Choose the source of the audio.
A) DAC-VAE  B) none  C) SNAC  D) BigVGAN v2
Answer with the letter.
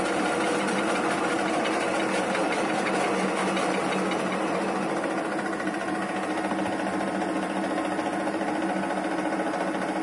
B